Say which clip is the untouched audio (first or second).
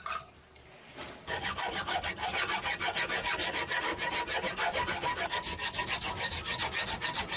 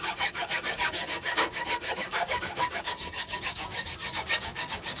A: first